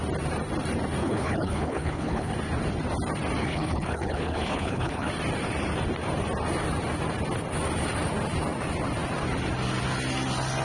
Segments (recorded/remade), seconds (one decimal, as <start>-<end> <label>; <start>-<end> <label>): 0.0-1.0 recorded; 1.0-2.3 remade; 2.3-3.4 recorded; 3.4-5.1 remade; 5.1-10.6 recorded

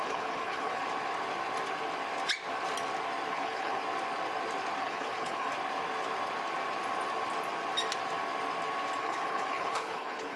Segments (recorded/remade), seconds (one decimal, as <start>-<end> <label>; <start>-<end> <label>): 0.0-0.8 remade; 0.8-3.3 recorded; 3.3-3.8 remade; 3.8-4.8 recorded; 4.8-5.5 remade; 5.5-9.0 recorded; 9.0-10.4 remade

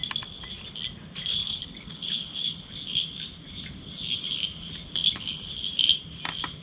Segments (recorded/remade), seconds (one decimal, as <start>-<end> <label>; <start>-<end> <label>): 0.0-1.4 recorded; 1.4-2.7 remade; 2.7-5.0 recorded; 5.0-5.5 remade; 5.5-6.6 recorded

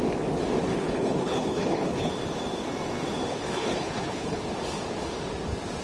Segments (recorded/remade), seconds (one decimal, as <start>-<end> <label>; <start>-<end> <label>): 0.0-0.7 recorded; 0.7-2.1 remade; 2.1-3.3 recorded; 3.3-4.4 remade; 4.4-5.8 recorded

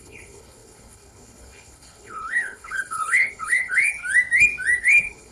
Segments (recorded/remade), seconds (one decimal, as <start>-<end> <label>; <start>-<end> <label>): 0.0-4.0 remade; 4.0-4.8 recorded; 4.8-5.3 remade

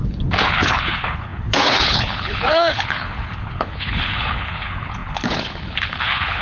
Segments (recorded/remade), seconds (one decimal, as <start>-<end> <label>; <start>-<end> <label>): 0.0-6.4 remade

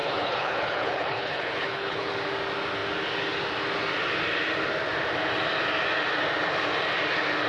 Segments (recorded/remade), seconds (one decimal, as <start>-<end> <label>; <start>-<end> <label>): 0.0-2.1 remade; 2.1-7.5 recorded

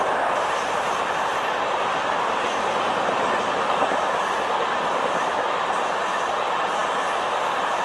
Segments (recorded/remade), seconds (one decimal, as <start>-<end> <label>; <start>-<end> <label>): 0.0-7.8 recorded